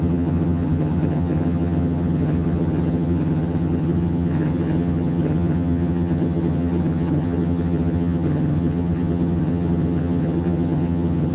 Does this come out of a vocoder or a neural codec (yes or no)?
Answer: yes